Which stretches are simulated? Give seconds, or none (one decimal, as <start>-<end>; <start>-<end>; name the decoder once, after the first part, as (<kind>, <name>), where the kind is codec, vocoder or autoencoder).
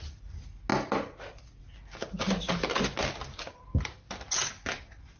none